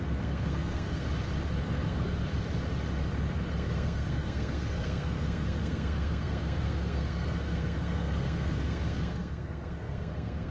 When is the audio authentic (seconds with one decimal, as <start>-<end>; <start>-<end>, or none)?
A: 1.1-1.6; 2.3-3.5